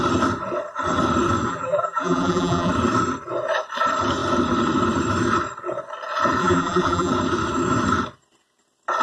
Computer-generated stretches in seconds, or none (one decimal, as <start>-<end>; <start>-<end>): 1.5-2.7; 6.4-7.1